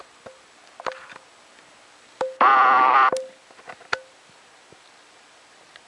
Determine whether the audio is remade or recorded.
recorded